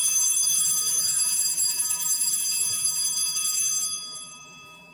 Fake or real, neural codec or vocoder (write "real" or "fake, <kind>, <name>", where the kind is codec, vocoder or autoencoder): fake, vocoder, BigVGAN v2